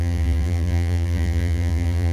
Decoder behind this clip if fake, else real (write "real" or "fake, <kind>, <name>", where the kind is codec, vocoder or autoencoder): fake, vocoder, BigVGAN v2